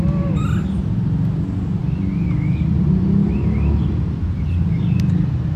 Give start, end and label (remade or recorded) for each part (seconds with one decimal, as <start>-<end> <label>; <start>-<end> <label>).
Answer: 0.0-5.6 recorded